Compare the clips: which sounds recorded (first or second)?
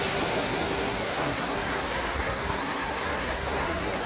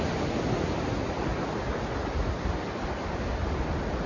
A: second